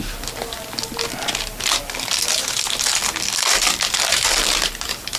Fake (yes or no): no